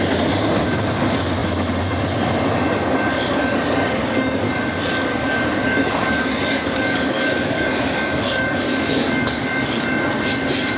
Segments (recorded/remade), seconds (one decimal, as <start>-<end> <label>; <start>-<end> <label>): 0.0-3.1 recorded; 3.1-4.5 remade; 4.5-4.9 recorded; 4.9-9.8 remade; 9.8-10.8 recorded